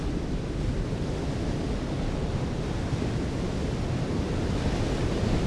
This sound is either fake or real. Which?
real